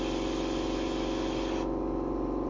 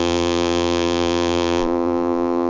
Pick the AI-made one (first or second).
second